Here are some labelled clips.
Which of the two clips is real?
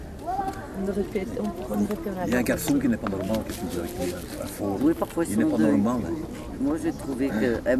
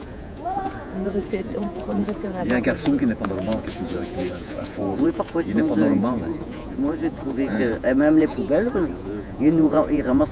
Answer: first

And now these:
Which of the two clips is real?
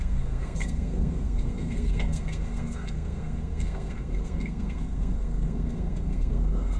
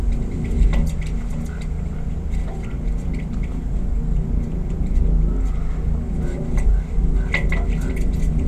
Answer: second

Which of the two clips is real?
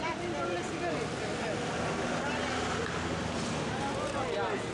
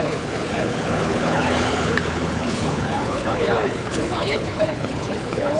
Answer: first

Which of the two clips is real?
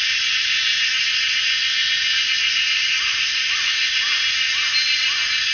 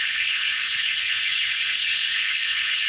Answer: first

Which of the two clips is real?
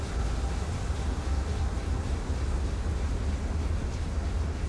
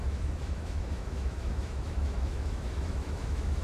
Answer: first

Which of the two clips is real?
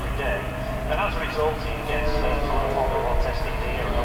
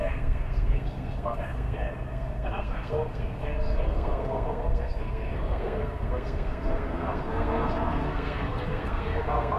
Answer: first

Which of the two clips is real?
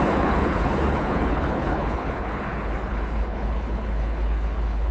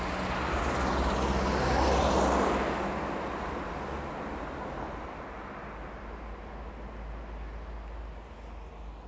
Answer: second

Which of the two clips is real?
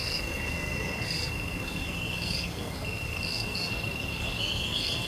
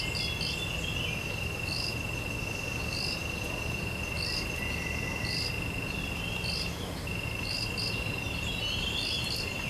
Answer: second